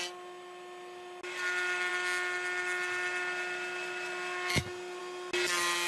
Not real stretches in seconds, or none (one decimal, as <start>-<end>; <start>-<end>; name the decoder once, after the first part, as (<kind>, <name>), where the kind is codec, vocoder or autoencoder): none